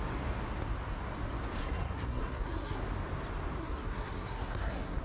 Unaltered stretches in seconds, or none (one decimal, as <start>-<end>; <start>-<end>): 0.0-1.6; 2.8-3.6